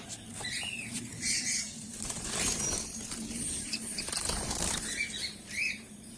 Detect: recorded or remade remade